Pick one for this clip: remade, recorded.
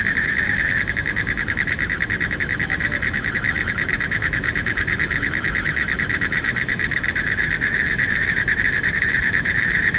remade